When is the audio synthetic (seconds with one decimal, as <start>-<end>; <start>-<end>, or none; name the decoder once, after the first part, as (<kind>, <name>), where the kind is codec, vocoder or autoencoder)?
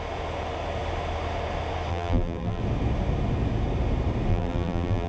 1.9-2.6 (vocoder, BigVGAN v2); 4.3-5.1